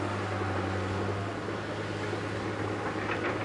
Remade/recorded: recorded